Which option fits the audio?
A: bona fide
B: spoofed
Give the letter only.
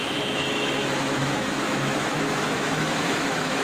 B